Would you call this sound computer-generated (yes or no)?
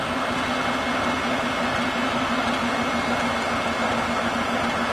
no